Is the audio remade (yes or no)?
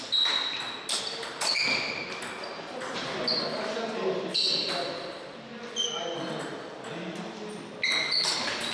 no